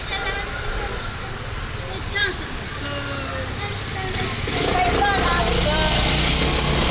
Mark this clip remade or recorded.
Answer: recorded